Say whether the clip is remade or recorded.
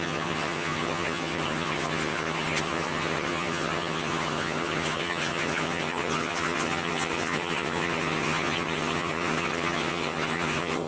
remade